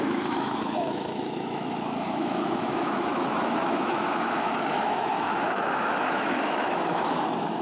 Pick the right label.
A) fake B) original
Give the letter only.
A